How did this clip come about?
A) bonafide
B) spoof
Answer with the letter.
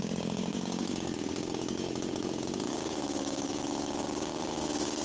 B